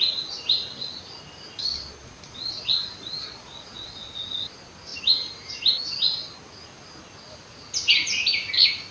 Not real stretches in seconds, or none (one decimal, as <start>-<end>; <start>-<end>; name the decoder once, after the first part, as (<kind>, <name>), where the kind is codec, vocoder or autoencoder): 2.0-4.2 (vocoder, Vocos)